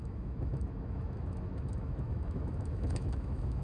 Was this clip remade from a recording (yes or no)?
yes